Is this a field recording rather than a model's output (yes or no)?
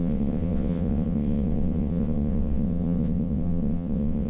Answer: no